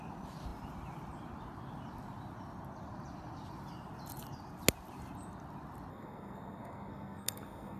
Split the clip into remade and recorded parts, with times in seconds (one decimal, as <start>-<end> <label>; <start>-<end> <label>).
0.0-5.9 recorded; 5.9-7.8 remade